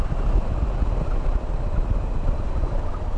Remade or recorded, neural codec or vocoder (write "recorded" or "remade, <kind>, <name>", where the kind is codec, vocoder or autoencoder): recorded